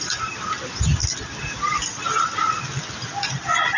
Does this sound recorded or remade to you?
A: recorded